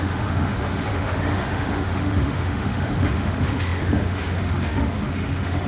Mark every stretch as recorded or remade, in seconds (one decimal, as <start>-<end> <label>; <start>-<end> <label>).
0.0-5.7 remade